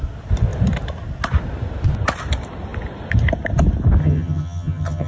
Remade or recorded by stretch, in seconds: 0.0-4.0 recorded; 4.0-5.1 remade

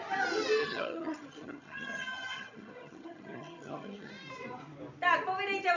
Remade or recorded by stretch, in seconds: 0.0-0.6 recorded; 0.6-4.1 remade; 4.1-5.8 recorded

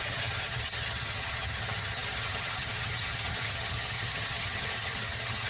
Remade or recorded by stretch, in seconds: 0.0-5.5 remade

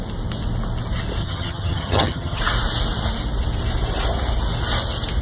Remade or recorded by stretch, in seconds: 0.0-1.2 recorded; 1.2-2.4 remade; 2.4-5.2 recorded